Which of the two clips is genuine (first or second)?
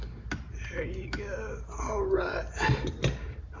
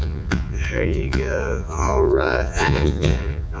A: first